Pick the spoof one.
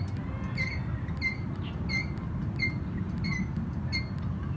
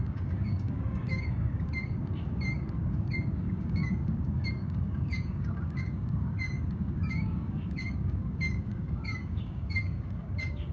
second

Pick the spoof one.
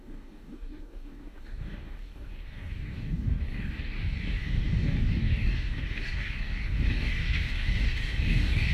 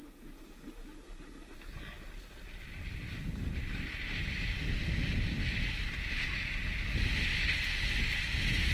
first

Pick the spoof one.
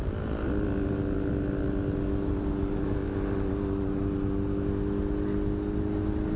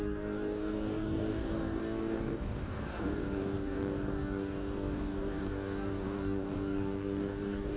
second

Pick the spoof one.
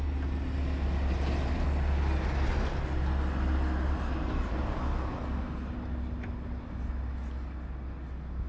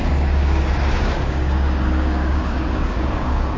second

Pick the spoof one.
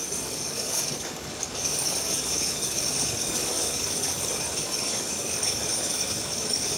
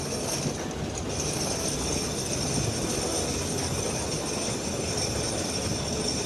first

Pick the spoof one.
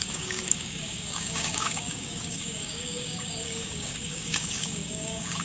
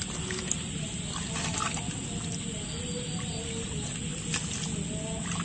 first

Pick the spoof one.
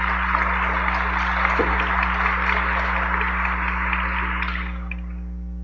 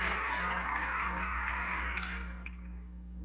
second